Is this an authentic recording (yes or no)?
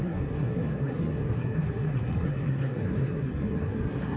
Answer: no